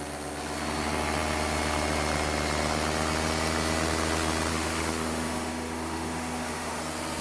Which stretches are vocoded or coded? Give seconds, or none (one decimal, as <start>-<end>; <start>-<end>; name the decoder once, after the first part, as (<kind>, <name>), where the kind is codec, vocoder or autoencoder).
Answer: 4.5-6.8 (autoencoder, DAC-VAE)